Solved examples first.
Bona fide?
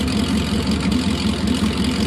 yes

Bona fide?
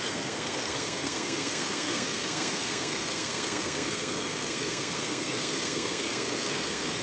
no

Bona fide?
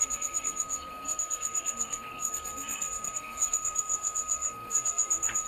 no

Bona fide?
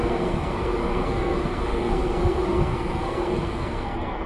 no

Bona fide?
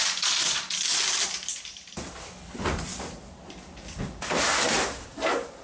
yes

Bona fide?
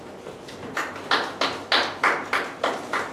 yes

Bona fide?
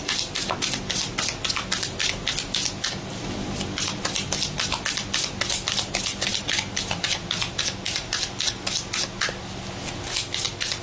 yes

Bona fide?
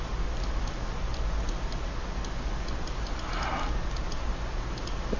yes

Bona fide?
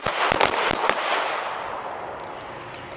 yes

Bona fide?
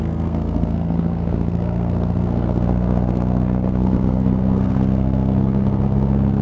no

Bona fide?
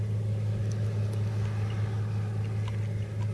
yes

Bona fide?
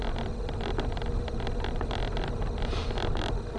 yes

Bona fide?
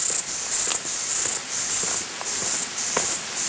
yes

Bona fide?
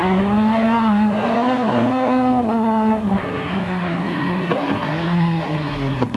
no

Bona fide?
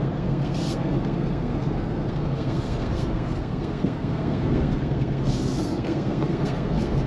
no